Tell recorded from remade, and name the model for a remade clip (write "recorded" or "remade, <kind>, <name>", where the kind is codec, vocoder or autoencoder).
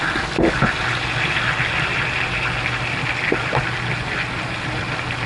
recorded